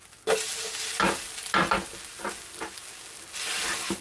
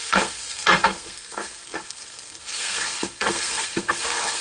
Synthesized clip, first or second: second